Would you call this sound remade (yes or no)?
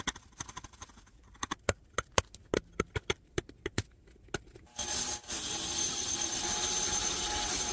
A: no